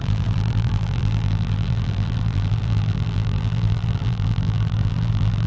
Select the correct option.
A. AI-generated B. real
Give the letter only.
A